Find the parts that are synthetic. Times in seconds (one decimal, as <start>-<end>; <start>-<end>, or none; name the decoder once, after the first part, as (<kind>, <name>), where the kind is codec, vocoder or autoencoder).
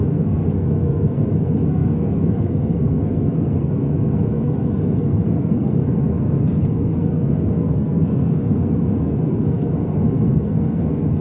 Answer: 0.0-11.2 (codec, SNAC)